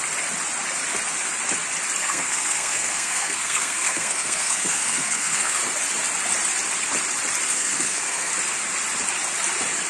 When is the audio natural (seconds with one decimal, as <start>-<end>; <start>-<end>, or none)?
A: 0.0-2.0; 5.6-7.5; 8.3-9.9